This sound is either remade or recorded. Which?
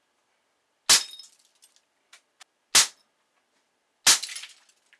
recorded